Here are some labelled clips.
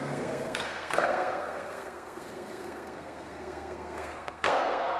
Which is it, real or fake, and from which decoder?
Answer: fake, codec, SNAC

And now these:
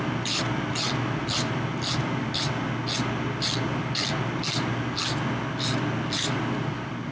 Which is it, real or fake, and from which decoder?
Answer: real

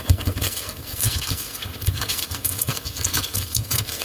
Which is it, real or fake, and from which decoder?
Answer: fake, codec, SNAC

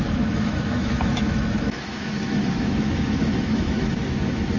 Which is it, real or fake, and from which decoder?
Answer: fake, autoencoder, DAC-VAE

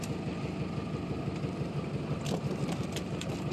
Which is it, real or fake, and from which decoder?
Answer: fake, vocoder, BigVGAN v2